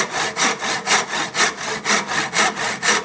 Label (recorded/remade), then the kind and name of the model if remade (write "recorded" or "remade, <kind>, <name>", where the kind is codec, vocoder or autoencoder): recorded